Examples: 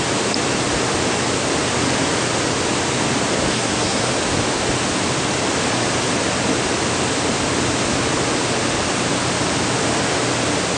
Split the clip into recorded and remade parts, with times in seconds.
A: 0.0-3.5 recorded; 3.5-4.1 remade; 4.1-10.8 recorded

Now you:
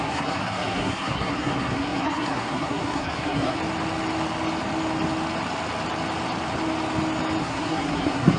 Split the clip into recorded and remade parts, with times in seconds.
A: 0.0-3.6 remade; 3.6-7.4 recorded; 7.4-8.4 remade